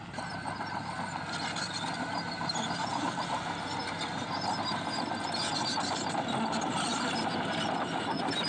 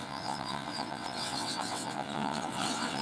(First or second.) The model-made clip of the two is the second